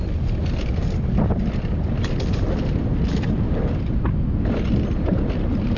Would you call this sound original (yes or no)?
yes